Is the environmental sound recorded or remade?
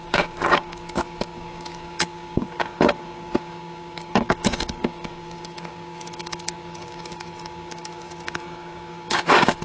remade